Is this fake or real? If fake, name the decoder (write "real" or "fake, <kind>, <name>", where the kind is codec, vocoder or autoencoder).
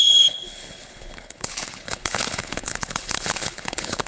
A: fake, codec, HILCodec